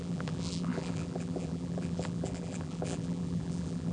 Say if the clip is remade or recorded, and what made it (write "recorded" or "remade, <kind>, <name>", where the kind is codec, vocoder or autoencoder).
remade, vocoder, BigVGAN v2